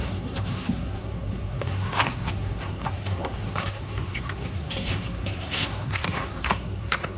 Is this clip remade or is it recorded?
remade